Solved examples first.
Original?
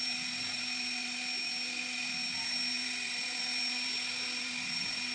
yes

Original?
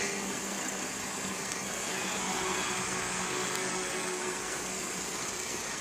no